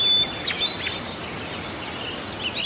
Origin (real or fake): real